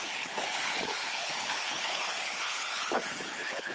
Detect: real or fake fake